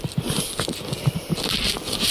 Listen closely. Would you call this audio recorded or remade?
recorded